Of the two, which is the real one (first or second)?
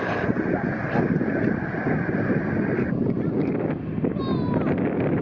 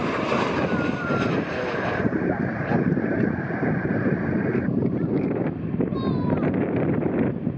first